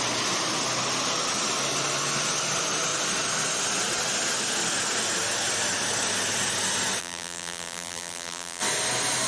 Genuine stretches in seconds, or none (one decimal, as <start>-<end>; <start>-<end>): 0.0-7.0; 8.6-9.3